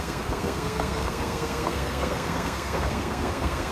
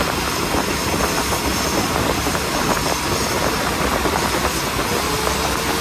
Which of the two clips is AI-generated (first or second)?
first